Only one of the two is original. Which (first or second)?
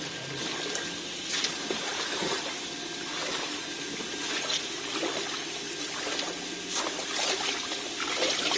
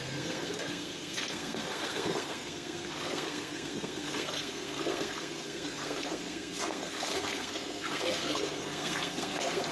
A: first